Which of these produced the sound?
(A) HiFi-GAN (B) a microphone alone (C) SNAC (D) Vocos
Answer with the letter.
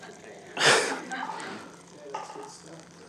B